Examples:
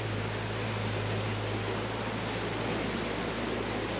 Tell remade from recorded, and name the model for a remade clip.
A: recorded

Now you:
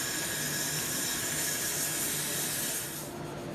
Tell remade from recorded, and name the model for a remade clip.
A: recorded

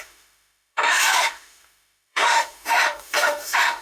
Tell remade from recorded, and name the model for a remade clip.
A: remade, autoencoder, DAC-VAE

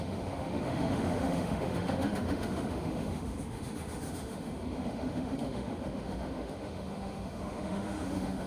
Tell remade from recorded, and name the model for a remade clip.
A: remade, autoencoder, DAC-VAE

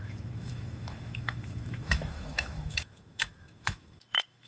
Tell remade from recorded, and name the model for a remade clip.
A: remade, autoencoder, DAC-VAE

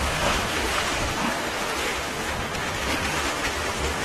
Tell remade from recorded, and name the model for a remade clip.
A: remade, autoencoder, DAC-VAE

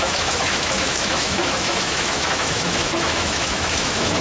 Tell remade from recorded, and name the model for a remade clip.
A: remade, autoencoder, DAC-VAE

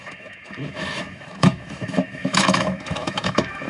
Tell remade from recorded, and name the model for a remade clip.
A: remade, autoencoder, DAC-VAE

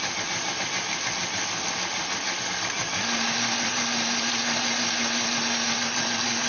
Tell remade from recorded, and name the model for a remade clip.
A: recorded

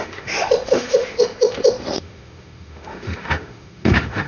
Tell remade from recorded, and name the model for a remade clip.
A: remade, autoencoder, DAC-VAE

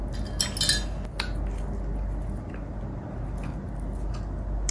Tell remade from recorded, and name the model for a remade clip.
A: recorded